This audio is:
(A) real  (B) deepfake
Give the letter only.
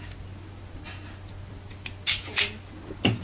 A